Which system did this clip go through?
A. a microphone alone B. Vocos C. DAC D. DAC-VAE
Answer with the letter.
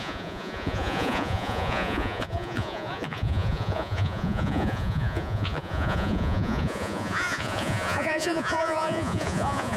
B